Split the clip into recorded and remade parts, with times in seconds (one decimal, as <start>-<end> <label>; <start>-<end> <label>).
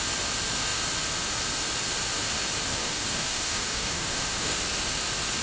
0.0-2.7 recorded; 2.7-4.6 remade; 4.6-5.4 recorded